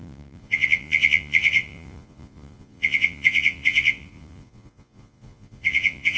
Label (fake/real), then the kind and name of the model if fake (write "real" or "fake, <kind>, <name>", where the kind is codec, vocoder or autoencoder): fake, vocoder, Vocos